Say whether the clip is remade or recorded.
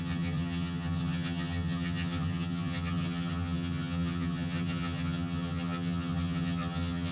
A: remade